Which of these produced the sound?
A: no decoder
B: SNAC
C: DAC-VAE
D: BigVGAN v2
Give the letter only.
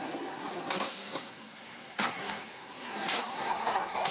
B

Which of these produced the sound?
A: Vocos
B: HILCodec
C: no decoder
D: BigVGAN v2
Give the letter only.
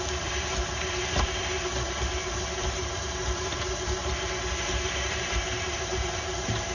D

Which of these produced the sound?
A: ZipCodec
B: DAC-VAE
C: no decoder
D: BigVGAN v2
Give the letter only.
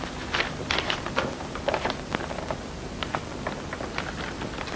C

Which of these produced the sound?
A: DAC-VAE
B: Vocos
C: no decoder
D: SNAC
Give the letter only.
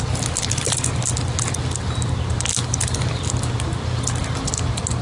C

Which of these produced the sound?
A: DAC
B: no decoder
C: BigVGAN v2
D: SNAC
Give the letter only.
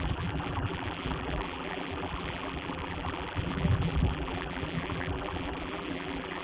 C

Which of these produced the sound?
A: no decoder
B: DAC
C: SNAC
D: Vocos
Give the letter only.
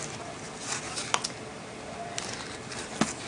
A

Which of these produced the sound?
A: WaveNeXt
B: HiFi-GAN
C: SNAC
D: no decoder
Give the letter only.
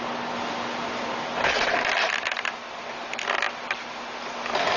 D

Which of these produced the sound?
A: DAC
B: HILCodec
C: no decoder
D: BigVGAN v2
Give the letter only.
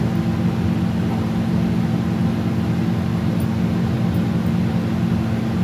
C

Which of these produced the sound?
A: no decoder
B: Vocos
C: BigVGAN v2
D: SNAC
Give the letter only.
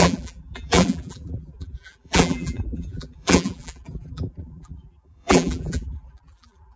C